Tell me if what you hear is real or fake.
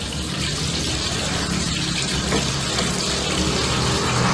real